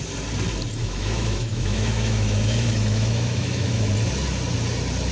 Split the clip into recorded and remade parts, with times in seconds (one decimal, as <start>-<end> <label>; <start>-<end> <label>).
0.0-0.8 recorded; 0.8-3.9 remade; 3.9-5.1 recorded